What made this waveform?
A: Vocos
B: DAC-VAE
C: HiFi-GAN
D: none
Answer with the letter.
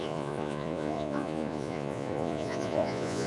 A